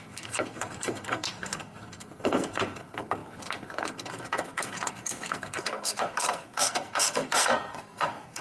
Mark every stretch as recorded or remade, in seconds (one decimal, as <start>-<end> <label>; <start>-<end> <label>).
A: 0.0-8.4 remade